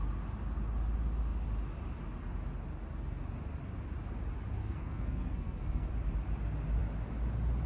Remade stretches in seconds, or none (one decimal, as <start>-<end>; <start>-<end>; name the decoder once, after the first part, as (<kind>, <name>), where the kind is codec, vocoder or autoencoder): 4.6-5.9 (codec, SNAC)